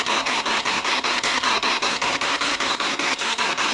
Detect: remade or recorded remade